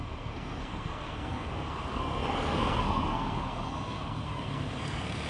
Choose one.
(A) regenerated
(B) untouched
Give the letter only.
A